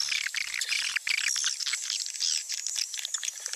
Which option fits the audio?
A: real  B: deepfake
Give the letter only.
A